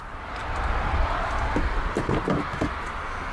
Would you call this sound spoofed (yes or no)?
no